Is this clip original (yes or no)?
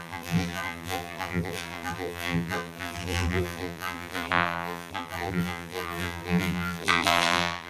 no